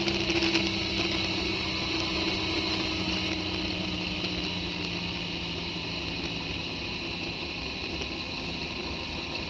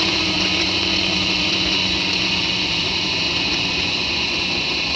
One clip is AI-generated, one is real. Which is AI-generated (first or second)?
second